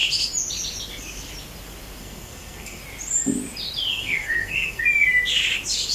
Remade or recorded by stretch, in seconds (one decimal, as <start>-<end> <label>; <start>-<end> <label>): 0.0-2.0 recorded; 2.0-2.8 remade; 2.8-3.9 recorded; 3.9-4.8 remade; 4.8-5.9 recorded